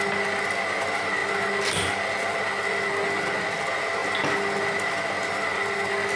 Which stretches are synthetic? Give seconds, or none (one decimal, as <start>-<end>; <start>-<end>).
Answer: none